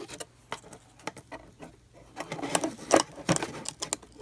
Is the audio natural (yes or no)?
yes